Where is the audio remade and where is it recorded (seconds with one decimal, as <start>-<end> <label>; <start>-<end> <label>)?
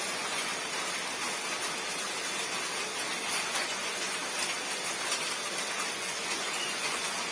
0.0-0.5 remade; 0.5-3.3 recorded; 3.3-4.2 remade; 4.2-5.9 recorded; 5.9-7.3 remade